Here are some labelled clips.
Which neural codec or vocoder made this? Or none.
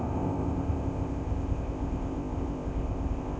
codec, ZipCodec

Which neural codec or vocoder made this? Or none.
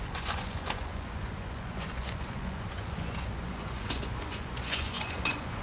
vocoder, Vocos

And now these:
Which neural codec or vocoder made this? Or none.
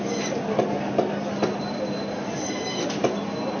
none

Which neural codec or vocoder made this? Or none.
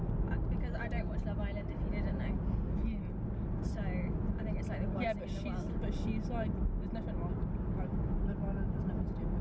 none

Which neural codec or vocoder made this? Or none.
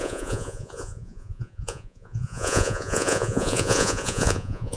vocoder, Vocos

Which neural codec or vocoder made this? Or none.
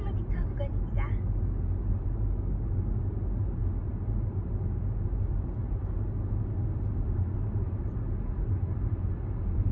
none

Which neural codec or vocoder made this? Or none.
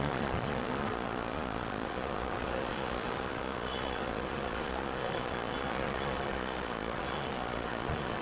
vocoder, Vocos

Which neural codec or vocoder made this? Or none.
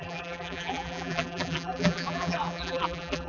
vocoder, BigVGAN v2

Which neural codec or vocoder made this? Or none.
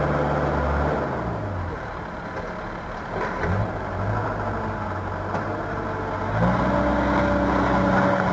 none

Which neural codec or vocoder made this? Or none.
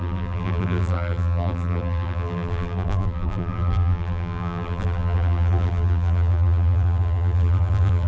vocoder, BigVGAN v2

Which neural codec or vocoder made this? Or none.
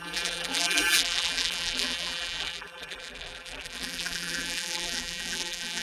vocoder, BigVGAN v2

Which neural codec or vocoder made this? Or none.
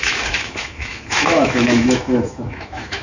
autoencoder, DAC-VAE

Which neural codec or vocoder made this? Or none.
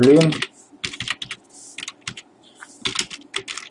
none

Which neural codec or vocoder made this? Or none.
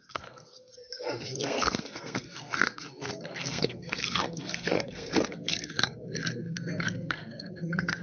codec, SNAC